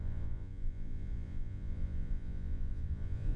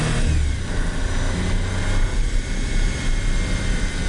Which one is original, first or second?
second